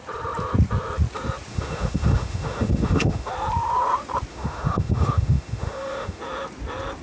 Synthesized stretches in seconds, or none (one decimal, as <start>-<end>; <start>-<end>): 1.5-3.3; 4.3-6.2